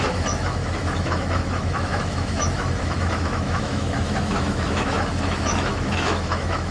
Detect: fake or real fake